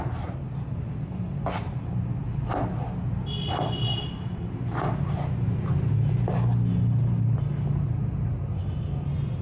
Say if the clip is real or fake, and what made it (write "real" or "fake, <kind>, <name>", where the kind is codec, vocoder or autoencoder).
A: real